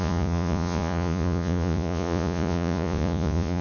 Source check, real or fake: fake